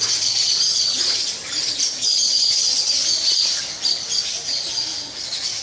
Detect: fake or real real